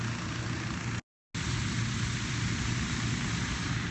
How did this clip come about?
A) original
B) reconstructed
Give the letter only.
A